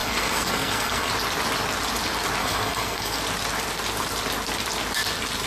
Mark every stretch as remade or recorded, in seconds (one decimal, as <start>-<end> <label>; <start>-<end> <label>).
0.0-1.1 remade; 1.1-2.4 recorded; 2.4-3.2 remade; 3.2-5.5 recorded